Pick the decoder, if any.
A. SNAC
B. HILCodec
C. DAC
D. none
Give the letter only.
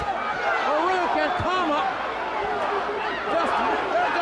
D